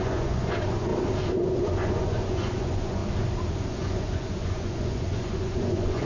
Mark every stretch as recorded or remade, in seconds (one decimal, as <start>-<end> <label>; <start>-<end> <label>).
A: 0.0-0.9 remade; 0.9-1.5 recorded; 1.5-3.0 remade; 3.0-3.7 recorded; 3.7-6.0 remade